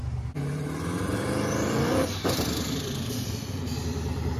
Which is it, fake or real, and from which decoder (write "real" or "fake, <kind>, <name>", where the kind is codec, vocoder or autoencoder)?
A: fake, vocoder, BigVGAN v2